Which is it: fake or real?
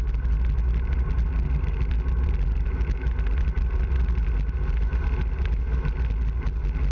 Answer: real